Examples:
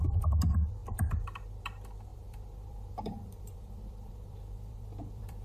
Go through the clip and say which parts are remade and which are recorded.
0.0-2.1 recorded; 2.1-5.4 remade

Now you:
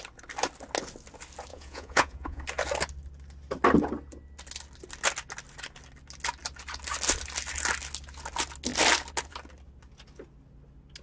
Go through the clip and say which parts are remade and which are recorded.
0.0-1.5 recorded; 1.5-2.4 remade; 2.4-11.0 recorded

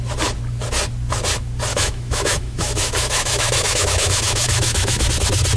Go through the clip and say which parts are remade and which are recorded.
0.0-1.7 recorded; 1.7-5.1 remade; 5.1-5.6 recorded